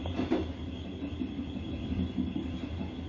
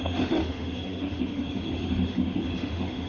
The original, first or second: first